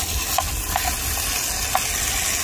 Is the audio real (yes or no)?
yes